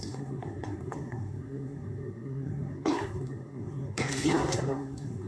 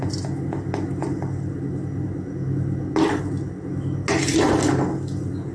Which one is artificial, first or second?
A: first